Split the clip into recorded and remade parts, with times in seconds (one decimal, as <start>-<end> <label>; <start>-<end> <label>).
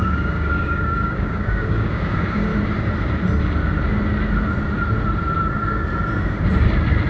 0.0-2.5 remade; 2.5-7.1 recorded